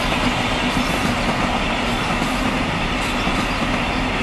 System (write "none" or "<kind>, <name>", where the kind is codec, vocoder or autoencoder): none